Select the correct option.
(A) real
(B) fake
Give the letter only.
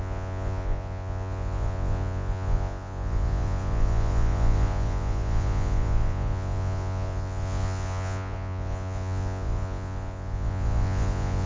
B